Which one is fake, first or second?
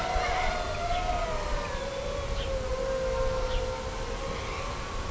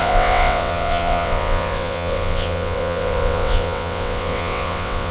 second